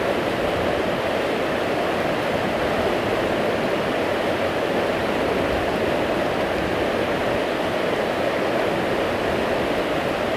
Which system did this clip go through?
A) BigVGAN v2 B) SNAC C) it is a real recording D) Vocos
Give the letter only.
C